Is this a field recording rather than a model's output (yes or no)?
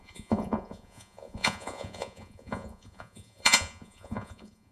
no